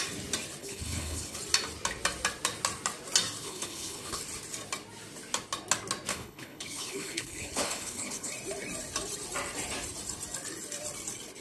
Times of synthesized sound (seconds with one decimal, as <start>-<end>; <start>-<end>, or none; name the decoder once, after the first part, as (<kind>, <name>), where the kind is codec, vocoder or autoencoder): 0.6-1.4 (codec, HILCodec); 3.4-4.2; 6.1-8.3